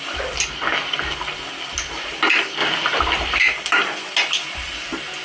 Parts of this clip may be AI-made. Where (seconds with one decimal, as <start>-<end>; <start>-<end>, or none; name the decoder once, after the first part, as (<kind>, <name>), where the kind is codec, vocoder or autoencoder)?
none